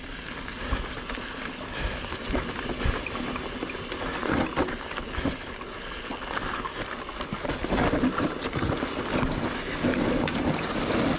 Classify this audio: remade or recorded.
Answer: recorded